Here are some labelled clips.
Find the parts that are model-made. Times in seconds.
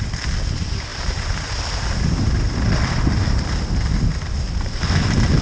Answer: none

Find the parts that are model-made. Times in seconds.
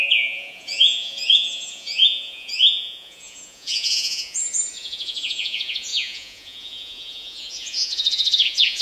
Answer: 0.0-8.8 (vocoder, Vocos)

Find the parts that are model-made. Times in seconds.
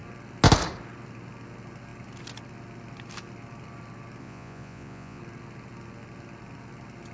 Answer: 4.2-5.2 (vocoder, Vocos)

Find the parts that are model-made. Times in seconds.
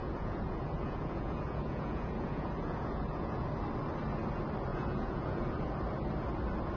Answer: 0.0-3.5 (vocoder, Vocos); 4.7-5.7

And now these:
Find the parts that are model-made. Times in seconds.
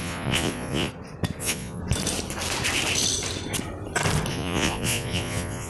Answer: 0.0-0.9 (vocoder, Vocos); 1.4-1.8; 4.3-5.7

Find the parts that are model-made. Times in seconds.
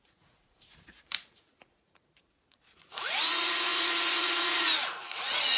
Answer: 0.0-5.6 (vocoder, Vocos)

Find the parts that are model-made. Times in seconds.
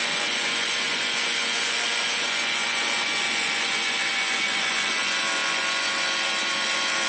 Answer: 0.0-7.1 (vocoder, Vocos)